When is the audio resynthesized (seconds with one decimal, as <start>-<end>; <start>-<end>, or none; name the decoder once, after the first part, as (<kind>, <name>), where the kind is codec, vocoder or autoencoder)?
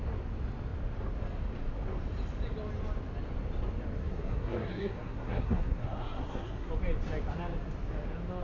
4.0-6.7 (codec, SNAC)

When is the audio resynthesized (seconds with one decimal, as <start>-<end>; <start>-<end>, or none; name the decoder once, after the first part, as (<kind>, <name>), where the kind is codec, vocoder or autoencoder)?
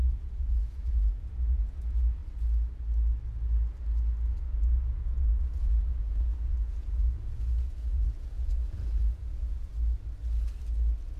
0.0-2.2 (vocoder, Vocos); 4.3-9.7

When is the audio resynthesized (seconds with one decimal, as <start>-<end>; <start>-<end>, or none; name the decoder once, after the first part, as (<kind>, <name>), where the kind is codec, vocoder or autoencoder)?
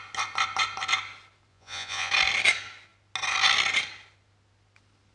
1.5-2.1 (vocoder, Vocos)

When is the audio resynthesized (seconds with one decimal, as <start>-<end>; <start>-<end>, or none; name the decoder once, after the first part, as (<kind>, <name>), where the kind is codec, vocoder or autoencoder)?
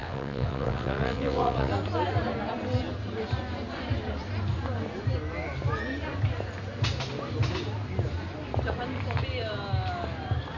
0.0-1.7 (vocoder, WaveNeXt)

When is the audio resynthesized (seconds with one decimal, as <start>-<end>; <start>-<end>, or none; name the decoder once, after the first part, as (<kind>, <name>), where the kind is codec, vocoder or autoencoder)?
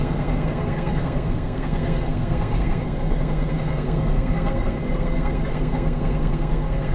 0.0-6.9 (codec, SNAC)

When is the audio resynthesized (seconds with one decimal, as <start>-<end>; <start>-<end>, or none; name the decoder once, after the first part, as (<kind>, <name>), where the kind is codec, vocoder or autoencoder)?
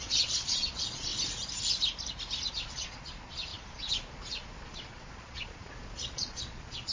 0.0-1.1 (vocoder, Vocos); 2.5-6.9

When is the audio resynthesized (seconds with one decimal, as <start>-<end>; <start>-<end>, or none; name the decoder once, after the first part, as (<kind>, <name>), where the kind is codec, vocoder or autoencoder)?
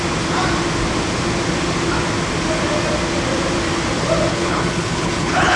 4.3-5.6 (codec, HILCodec)